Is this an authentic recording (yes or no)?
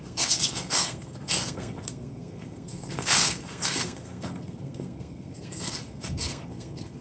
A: no